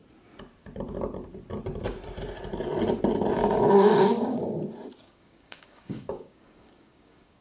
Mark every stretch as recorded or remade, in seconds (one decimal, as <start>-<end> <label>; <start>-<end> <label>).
0.0-3.7 recorded; 3.7-4.4 remade; 4.4-5.0 recorded; 5.0-7.4 remade

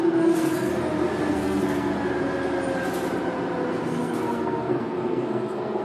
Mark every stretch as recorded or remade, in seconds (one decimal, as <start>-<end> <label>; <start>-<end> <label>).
0.0-0.7 remade; 0.7-1.3 recorded; 1.3-1.9 remade; 1.9-3.7 recorded; 3.7-5.8 remade

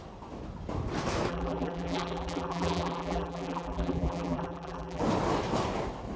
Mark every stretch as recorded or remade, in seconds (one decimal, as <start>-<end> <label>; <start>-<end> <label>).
0.0-1.3 recorded; 1.3-5.0 remade; 5.0-6.2 recorded

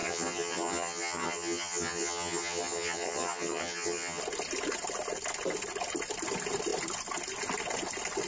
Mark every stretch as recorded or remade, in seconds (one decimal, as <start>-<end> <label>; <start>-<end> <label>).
0.0-4.2 remade; 4.2-8.3 recorded

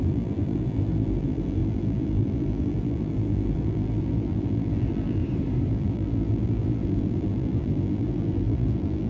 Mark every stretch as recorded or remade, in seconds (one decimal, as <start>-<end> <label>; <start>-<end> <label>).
0.0-5.2 remade; 5.2-5.7 recorded; 5.7-9.1 remade

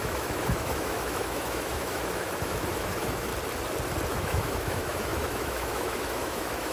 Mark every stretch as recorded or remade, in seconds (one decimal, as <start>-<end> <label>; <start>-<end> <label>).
0.0-3.3 remade; 3.3-4.1 recorded; 4.1-6.7 remade